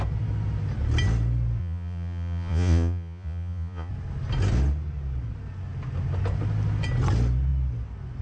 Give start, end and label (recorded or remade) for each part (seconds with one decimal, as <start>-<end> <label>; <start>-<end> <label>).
0.0-1.6 recorded; 1.6-3.9 remade; 3.9-8.2 recorded